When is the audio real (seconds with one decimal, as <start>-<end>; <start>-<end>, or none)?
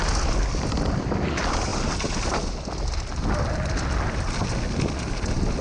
0.0-5.6